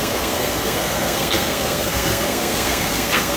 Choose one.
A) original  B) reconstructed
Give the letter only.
B